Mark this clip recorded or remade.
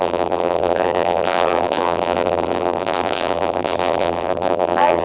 remade